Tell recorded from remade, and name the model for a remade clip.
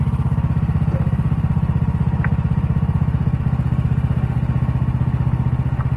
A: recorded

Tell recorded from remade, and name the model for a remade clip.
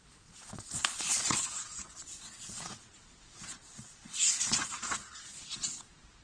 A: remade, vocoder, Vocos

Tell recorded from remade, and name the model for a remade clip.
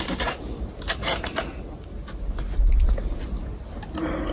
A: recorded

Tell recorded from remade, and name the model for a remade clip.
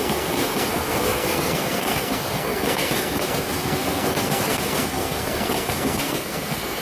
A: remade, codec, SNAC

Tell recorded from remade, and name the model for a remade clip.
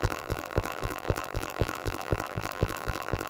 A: remade, vocoder, BigVGAN v2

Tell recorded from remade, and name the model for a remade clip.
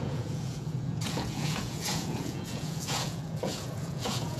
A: remade, vocoder, Vocos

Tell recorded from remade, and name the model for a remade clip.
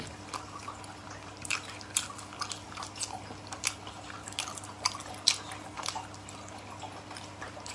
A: recorded